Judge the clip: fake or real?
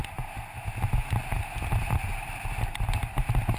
real